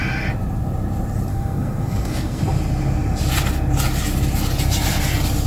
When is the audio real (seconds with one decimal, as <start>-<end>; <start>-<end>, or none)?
0.0-1.3; 2.4-5.5